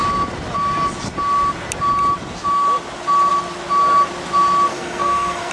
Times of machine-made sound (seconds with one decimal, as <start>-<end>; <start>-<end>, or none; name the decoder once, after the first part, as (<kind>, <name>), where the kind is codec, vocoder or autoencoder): 4.7-5.5 (codec, SNAC)